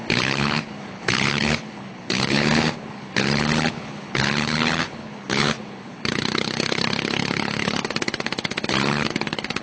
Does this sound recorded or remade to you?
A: remade